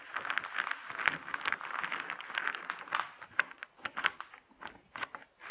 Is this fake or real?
real